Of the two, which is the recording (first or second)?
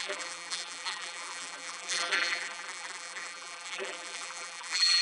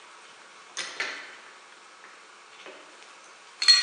second